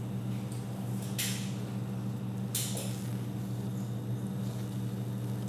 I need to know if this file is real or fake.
real